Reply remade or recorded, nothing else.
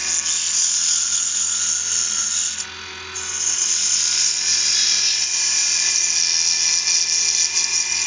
recorded